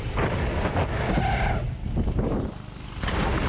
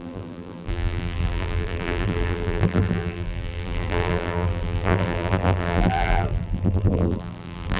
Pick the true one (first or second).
first